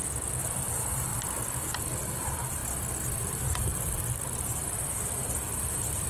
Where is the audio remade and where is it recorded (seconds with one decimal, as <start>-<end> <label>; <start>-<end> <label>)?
0.0-1.1 remade; 1.1-1.6 recorded; 1.6-2.6 remade; 2.6-3.2 recorded; 3.2-6.1 remade